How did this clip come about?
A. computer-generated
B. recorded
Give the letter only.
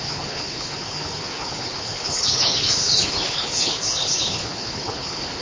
A